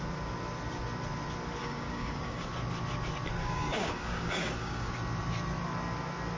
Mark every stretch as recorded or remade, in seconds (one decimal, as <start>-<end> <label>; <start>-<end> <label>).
0.0-1.6 recorded; 1.6-2.5 remade; 2.5-3.4 recorded; 3.4-4.9 remade; 4.9-6.4 recorded